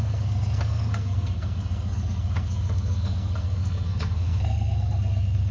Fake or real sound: fake